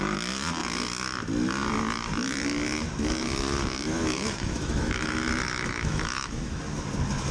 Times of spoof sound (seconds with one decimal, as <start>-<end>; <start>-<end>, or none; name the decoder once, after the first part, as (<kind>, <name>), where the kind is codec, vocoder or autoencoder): 4.1-6.6 (autoencoder, DAC-VAE)